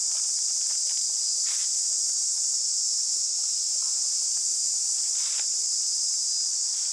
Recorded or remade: recorded